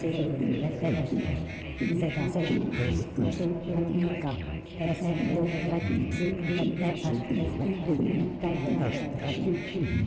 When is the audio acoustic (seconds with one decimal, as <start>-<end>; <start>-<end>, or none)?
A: 0.0-3.8; 5.0-10.1

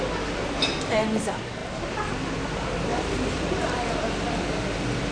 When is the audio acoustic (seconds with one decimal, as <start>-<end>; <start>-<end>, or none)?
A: 0.0-2.9

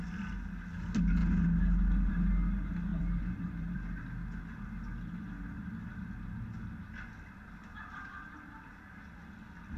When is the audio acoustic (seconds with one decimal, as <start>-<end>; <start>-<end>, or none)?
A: 0.0-2.9; 4.0-9.8

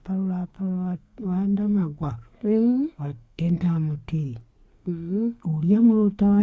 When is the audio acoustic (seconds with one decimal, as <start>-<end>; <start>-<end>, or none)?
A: 0.0-0.5; 4.0-4.7

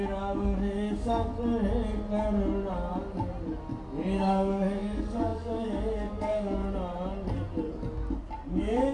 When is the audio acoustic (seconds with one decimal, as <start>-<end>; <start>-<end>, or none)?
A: 1.3-4.2; 6.6-8.5